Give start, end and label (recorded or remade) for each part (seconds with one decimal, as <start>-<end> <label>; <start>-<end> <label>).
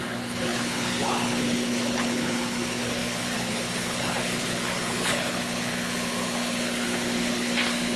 0.0-8.0 remade